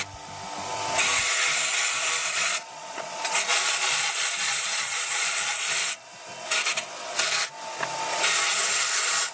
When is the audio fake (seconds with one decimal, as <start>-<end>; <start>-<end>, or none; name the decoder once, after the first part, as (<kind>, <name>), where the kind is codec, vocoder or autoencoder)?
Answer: 2.2-6.1 (vocoder, Vocos)